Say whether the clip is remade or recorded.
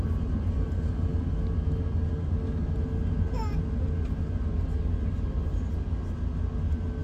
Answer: recorded